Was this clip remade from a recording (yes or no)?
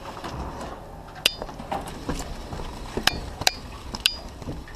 no